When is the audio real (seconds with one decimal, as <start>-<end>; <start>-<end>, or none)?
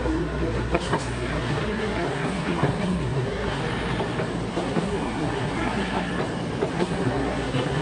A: 3.6-4.5; 6.1-6.7